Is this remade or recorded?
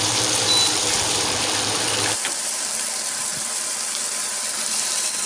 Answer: remade